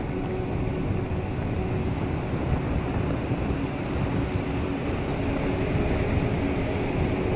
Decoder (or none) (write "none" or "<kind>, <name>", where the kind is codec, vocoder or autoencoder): none